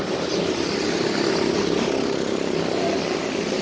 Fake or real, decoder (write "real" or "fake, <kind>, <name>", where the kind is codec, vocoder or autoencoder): real